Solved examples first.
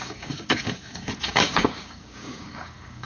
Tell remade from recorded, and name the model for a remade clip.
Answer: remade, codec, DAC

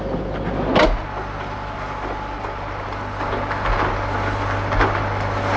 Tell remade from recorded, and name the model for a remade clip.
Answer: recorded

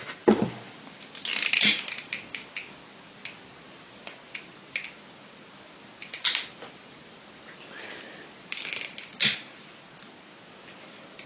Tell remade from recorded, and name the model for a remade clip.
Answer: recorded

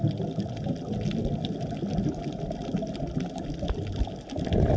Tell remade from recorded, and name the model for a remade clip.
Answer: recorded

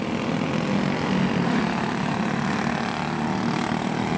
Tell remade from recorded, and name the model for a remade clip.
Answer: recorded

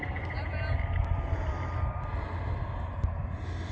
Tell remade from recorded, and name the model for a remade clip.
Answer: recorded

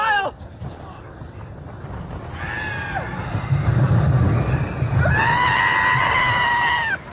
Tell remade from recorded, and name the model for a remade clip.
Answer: recorded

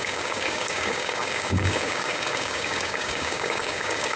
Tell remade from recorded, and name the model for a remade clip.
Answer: remade, codec, DAC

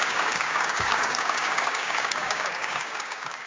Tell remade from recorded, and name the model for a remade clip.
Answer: remade, codec, DAC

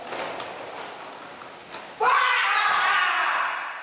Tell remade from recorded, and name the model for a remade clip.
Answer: recorded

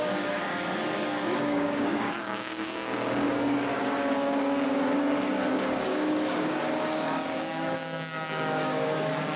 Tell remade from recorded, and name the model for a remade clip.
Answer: remade, codec, DAC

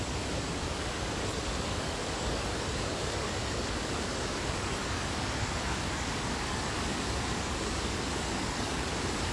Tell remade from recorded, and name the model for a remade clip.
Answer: remade, codec, DAC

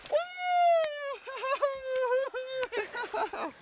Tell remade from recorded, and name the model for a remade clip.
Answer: recorded